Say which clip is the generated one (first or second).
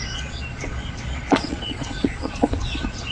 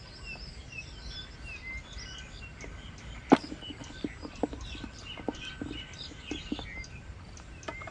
first